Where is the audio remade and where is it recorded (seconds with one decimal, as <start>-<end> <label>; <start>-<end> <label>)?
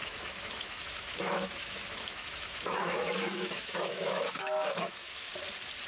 0.0-5.3 remade; 5.3-5.9 recorded